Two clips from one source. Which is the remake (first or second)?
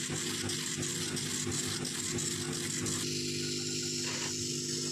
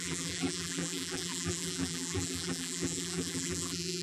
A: second